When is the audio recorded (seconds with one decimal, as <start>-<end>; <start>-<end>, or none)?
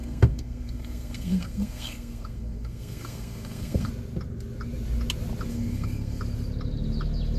3.9-5.5; 6.2-7.4